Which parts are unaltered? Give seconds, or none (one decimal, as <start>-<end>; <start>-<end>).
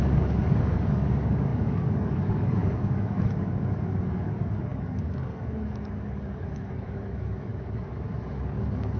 none